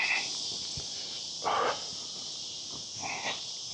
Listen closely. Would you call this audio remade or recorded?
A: recorded